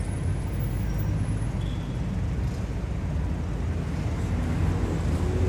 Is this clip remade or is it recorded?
recorded